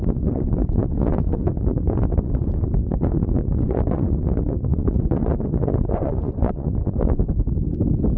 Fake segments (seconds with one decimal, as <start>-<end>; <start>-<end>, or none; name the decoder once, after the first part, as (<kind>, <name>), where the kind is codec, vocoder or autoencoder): 0.0-7.2 (vocoder, Vocos)